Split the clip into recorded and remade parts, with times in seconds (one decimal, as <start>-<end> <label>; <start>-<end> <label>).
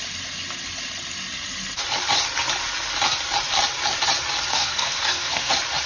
0.0-4.5 recorded; 4.5-5.5 remade; 5.5-5.9 recorded